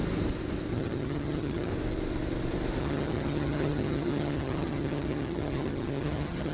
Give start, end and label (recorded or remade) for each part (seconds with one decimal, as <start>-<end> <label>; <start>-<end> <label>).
0.0-0.7 recorded; 0.7-1.7 remade; 1.7-2.8 recorded; 2.8-6.5 remade